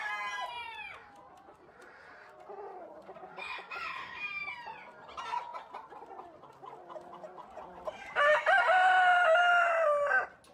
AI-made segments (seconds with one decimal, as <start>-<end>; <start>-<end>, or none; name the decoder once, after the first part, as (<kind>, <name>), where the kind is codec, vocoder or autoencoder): none